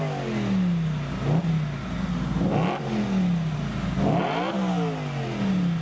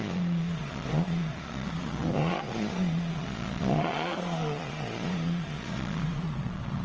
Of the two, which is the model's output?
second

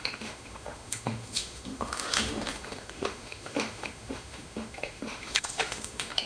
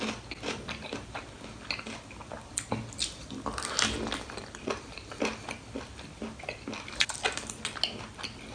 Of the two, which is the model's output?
first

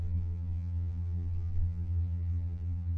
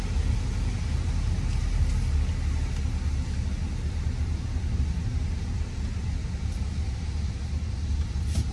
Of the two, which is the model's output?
first